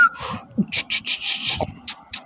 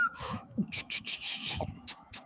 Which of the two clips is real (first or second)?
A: first